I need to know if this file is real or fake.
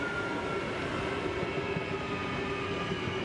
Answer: real